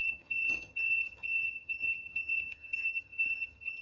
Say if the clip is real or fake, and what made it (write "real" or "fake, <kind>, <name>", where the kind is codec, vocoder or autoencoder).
fake, vocoder, HiFi-GAN